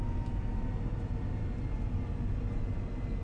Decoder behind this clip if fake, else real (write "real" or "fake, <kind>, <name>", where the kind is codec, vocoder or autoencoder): real